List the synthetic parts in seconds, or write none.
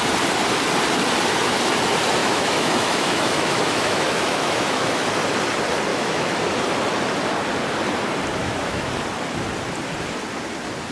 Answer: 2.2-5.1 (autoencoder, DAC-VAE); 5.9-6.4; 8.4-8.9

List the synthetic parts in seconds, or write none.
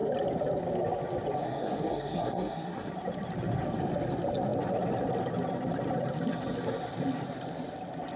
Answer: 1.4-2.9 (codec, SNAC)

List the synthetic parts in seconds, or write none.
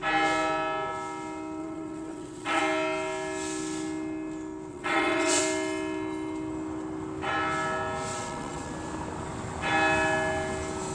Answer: 1.6-2.6 (vocoder, WaveNeXt); 4.7-5.4; 8.1-8.7